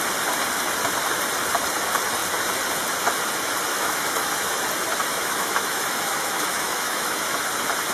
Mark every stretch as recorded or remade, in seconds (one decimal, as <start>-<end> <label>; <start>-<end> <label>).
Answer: 0.0-3.7 recorded; 3.7-4.6 remade; 4.6-5.1 recorded; 5.1-7.4 remade; 7.4-7.9 recorded